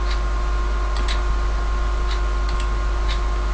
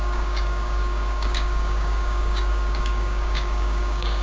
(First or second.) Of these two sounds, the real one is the first